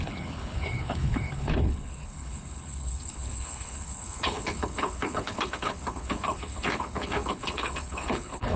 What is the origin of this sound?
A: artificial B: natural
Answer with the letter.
A